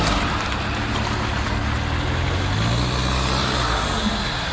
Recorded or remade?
recorded